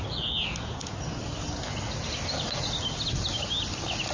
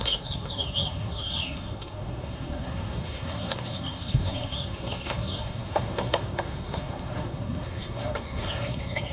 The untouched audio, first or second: first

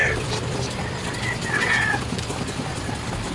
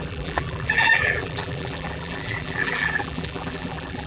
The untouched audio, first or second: first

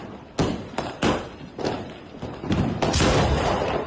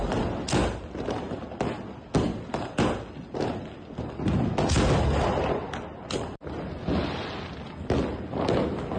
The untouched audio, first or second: second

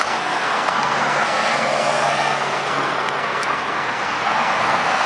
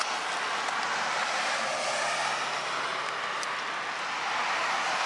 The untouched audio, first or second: second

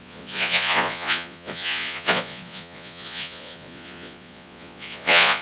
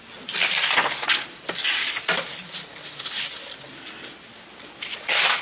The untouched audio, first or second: second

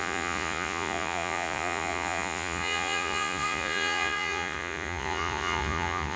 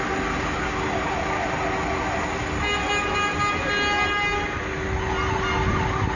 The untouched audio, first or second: second